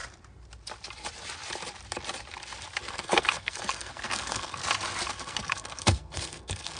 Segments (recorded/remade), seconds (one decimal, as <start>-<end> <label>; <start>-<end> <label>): 0.0-2.8 recorded; 2.8-4.6 remade; 4.6-5.1 recorded; 5.1-6.8 remade